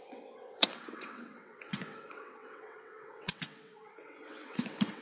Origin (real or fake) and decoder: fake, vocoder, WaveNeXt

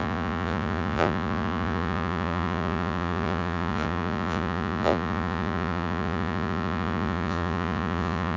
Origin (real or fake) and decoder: fake, vocoder, Vocos